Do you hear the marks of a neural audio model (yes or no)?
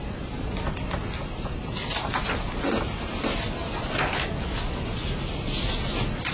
no